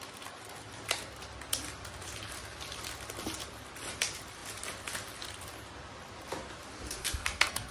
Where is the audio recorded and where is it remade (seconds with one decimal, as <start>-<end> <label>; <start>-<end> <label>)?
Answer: 0.0-7.0 recorded; 7.0-7.7 remade